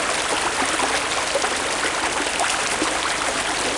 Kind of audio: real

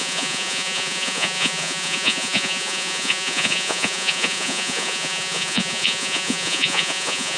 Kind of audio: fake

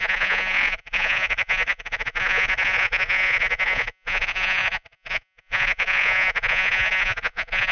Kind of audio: fake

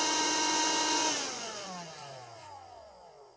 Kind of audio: fake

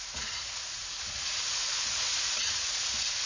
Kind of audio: fake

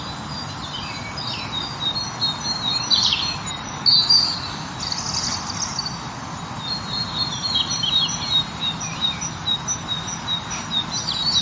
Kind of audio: real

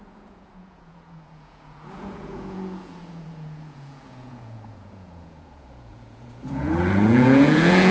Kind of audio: fake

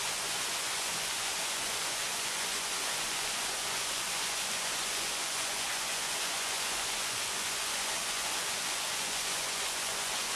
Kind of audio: fake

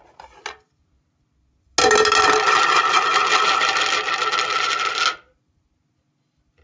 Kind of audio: real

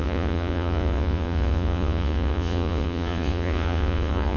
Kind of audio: fake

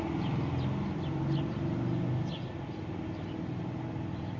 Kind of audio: real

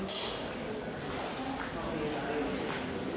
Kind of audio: real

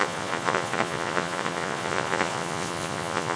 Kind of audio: fake